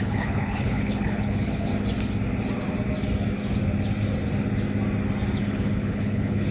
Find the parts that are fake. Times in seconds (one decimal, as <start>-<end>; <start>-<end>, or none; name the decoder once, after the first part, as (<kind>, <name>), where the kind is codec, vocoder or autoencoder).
0.0-1.7 (codec, HILCodec); 5.4-6.5

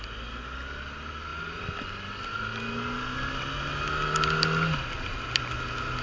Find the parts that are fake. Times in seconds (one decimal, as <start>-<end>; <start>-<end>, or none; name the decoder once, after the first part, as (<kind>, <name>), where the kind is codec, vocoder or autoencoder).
none

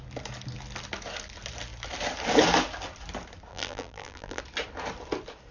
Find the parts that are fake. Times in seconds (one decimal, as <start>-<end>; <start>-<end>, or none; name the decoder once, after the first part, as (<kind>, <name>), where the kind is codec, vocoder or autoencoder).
3.5-4.4 (vocoder, BigVGAN v2)

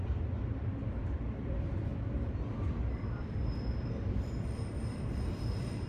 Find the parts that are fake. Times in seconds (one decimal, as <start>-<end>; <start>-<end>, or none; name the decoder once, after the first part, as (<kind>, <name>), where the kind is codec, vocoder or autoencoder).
0.0-5.9 (vocoder, BigVGAN v2)

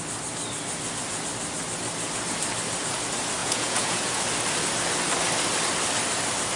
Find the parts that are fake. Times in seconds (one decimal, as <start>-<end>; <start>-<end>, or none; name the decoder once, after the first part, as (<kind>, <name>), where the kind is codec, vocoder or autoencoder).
3.4-4.2 (vocoder, Vocos)

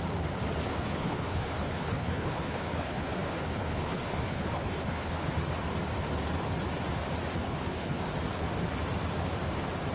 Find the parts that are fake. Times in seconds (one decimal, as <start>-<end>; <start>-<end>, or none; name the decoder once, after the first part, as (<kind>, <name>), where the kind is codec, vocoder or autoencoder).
0.7-5.3 (codec, HILCodec); 7.4-8.0

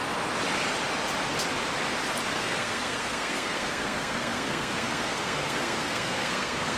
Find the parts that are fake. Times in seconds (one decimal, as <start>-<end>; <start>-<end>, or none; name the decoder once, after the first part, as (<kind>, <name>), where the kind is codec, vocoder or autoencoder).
2.3-6.8 (codec, SNAC)

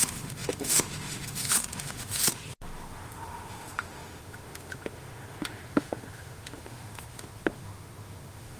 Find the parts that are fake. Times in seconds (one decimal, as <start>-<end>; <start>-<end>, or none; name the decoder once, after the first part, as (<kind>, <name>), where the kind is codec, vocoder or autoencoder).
0.0-8.6 (autoencoder, DAC-VAE)